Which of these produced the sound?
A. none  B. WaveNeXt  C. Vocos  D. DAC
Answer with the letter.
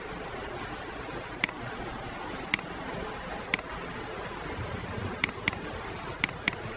A